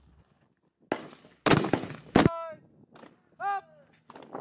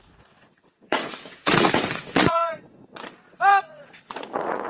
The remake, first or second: second